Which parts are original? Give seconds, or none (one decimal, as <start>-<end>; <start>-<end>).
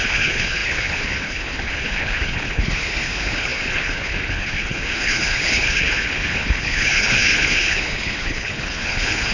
none